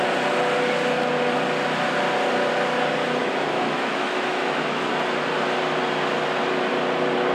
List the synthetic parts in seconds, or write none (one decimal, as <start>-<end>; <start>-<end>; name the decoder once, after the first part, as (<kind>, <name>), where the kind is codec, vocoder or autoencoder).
3.2-4.9 (autoencoder, DAC-VAE)